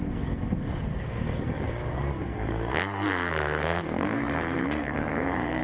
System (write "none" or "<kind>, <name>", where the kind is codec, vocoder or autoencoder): codec, SNAC